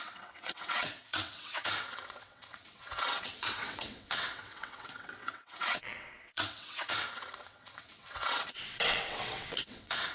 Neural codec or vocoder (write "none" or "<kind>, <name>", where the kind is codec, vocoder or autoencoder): vocoder, WaveNeXt